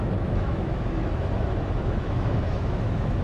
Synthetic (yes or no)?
yes